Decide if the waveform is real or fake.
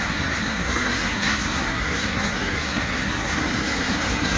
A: fake